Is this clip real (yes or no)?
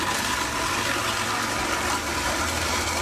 yes